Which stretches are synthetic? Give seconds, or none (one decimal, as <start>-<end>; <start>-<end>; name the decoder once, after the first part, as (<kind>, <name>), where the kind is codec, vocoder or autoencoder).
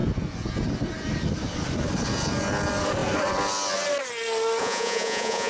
4.6-5.5 (vocoder, Vocos)